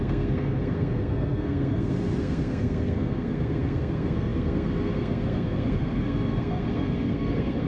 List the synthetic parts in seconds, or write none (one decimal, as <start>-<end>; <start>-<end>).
0.0-7.7